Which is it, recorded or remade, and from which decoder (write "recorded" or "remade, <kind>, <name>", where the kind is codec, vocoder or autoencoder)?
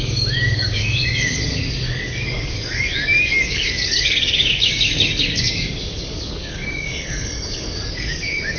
remade, codec, DAC